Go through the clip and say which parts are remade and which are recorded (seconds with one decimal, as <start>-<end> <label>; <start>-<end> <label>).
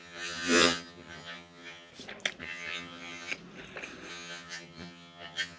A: 0.0-1.9 remade; 1.9-2.4 recorded; 2.4-3.3 remade; 3.3-4.1 recorded; 4.1-5.6 remade